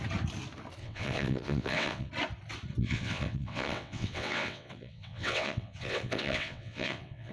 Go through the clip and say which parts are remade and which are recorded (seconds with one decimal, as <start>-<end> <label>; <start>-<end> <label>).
0.0-0.8 recorded; 0.8-2.1 remade; 2.1-2.8 recorded; 2.8-7.3 remade